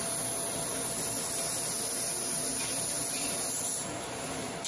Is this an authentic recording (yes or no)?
yes